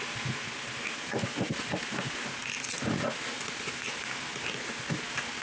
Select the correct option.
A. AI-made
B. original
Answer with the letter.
B